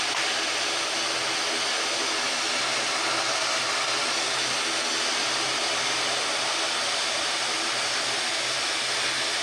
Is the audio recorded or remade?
recorded